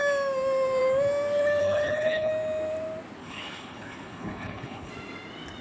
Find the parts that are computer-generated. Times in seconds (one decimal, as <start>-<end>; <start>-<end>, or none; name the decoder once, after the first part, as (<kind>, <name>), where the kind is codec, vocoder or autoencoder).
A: 1.6-2.3 (codec, HILCodec); 3.2-4.9